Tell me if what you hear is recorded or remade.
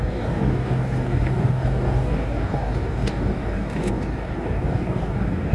remade